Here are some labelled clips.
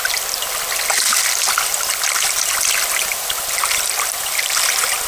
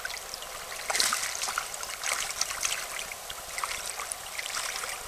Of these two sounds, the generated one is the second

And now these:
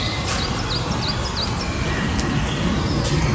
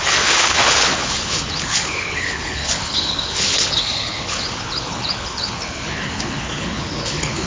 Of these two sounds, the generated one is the second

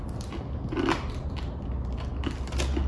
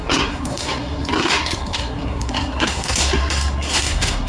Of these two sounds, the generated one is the second